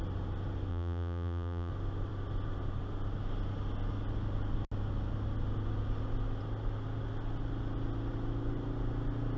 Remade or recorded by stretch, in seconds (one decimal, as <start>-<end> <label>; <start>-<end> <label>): 0.0-0.7 recorded; 0.7-1.7 remade; 1.7-9.4 recorded